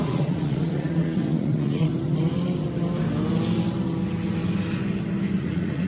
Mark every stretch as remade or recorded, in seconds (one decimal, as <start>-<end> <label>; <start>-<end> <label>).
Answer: 0.0-1.9 remade; 1.9-5.4 recorded; 5.4-5.9 remade